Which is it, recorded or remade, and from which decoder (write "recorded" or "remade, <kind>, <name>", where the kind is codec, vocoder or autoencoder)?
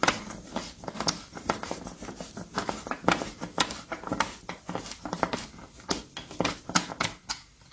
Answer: recorded